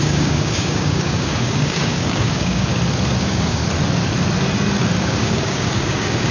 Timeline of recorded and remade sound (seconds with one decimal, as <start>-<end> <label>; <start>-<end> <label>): 0.0-2.7 remade; 2.7-3.2 recorded; 3.2-3.6 remade; 3.6-5.0 recorded; 5.0-6.3 remade